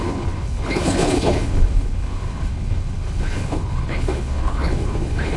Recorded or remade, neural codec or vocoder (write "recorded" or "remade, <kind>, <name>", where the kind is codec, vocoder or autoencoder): remade, codec, HILCodec